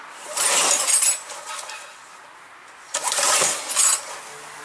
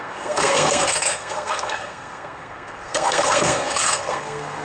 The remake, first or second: second